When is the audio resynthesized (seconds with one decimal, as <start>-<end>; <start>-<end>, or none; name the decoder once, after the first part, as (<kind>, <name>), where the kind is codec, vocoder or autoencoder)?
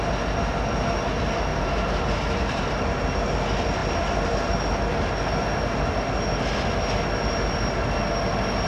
1.5-3.0 (vocoder, BigVGAN v2)